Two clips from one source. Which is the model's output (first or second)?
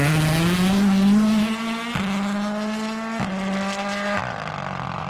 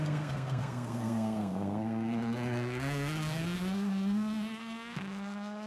second